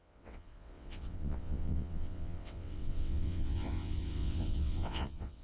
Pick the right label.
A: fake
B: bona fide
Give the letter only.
A